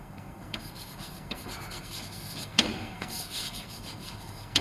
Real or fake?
fake